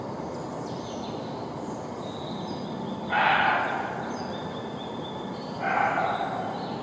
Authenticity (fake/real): real